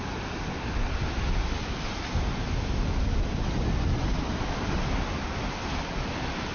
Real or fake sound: real